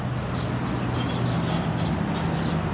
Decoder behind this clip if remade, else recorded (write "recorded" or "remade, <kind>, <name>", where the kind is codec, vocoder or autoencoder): recorded